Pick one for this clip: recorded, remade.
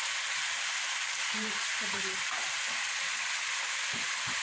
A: remade